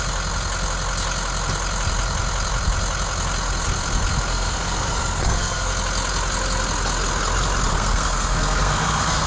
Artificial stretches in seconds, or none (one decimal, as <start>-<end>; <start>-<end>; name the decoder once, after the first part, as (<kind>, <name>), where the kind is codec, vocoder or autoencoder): 4.3-5.7 (codec, SNAC); 7.7-9.3